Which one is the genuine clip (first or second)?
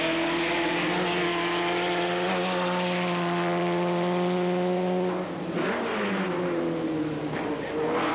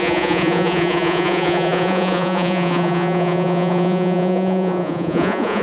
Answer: first